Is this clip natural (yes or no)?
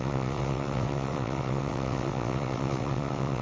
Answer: no